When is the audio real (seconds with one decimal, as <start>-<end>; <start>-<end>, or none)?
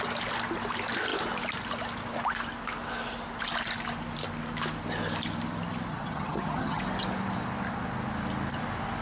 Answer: 0.0-5.9; 6.8-9.0